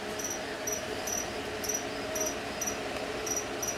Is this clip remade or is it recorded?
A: recorded